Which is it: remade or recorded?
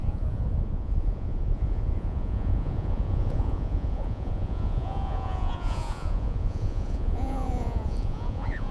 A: remade